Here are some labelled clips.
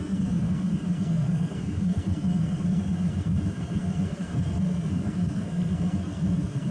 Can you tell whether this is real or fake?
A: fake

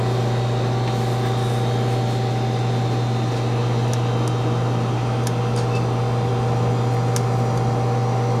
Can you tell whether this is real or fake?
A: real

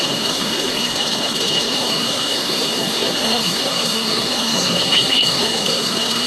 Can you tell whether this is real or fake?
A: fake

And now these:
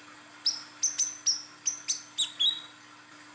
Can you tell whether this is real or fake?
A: real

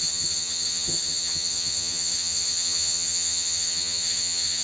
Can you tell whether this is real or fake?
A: fake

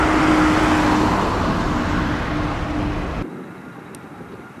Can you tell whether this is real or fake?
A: real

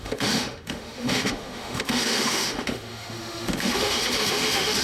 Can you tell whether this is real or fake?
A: fake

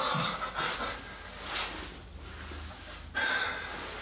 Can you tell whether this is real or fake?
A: real